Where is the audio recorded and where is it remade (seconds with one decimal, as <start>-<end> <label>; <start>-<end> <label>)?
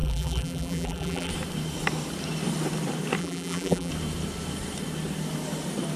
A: 0.0-1.3 remade; 1.3-3.2 recorded; 3.2-3.9 remade; 3.9-6.0 recorded